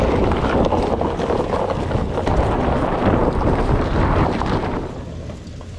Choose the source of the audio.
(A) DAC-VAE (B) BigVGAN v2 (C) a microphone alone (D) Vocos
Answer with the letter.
C